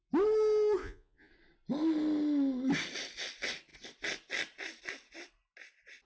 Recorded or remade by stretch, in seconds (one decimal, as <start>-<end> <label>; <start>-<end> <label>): 0.0-0.8 recorded; 0.8-1.3 remade; 1.3-6.1 recorded